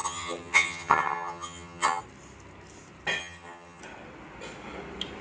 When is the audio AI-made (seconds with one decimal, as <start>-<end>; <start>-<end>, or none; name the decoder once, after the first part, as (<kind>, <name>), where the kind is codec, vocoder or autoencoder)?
0.0-2.0 (vocoder, HiFi-GAN); 3.2-3.8